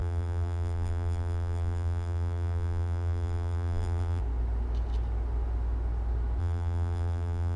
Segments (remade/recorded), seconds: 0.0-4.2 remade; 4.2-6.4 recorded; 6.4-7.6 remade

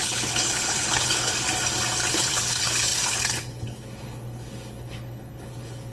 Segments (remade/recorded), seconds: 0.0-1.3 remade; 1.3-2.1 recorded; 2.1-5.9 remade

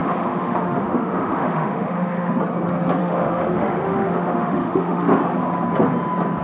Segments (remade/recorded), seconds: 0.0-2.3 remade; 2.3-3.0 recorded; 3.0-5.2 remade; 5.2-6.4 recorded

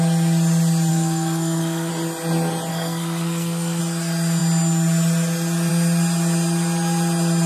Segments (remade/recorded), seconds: 0.0-0.9 recorded; 0.9-1.9 remade; 1.9-2.7 recorded; 2.7-3.8 remade; 3.8-7.5 recorded

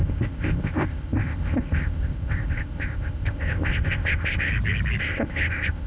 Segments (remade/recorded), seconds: 0.0-4.5 remade; 4.5-5.0 recorded; 5.0-5.9 remade

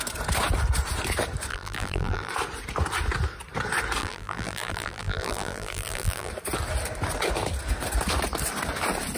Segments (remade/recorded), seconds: 0.0-1.5 recorded; 1.5-2.3 remade; 2.3-4.0 recorded; 4.0-6.3 remade; 6.3-9.2 recorded